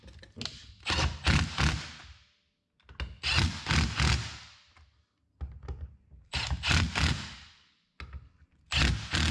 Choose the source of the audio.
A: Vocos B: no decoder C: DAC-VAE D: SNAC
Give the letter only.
B